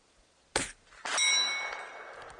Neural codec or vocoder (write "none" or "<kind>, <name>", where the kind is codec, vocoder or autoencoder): none